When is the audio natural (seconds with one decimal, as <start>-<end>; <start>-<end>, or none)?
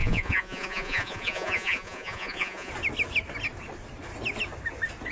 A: 2.7-5.1